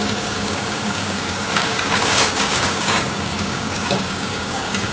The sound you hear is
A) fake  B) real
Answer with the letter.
A